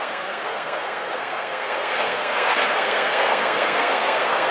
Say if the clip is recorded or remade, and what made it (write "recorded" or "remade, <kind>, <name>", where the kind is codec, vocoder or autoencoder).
remade, codec, SNAC